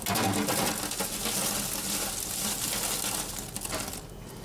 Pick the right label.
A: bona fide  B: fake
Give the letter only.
A